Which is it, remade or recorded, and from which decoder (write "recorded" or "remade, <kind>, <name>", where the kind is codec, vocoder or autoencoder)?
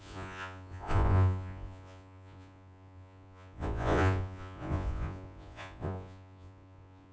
remade, vocoder, Vocos